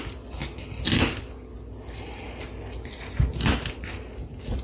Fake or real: real